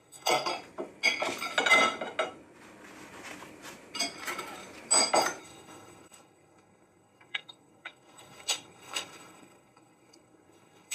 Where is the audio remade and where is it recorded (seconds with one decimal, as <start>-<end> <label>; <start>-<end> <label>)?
0.0-0.5 remade; 0.5-5.4 recorded; 5.4-10.9 remade